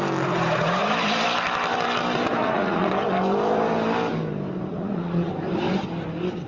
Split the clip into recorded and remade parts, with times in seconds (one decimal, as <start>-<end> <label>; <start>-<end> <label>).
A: 0.0-2.4 recorded; 2.4-2.9 remade; 2.9-4.7 recorded; 4.7-5.3 remade; 5.3-6.5 recorded